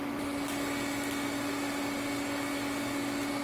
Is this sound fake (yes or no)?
no